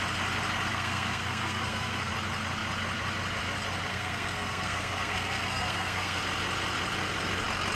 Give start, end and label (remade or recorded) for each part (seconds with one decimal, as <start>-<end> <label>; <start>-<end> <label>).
0.0-0.7 recorded; 0.7-2.1 remade; 2.1-3.9 recorded; 3.9-6.2 remade; 6.2-7.7 recorded